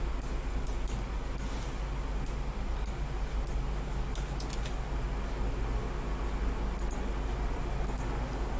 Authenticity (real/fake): real